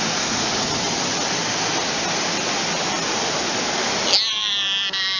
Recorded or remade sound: recorded